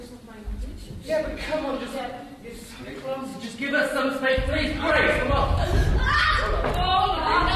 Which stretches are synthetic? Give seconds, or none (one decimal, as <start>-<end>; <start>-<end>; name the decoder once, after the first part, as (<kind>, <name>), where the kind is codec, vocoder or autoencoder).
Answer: none